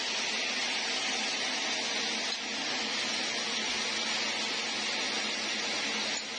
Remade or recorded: recorded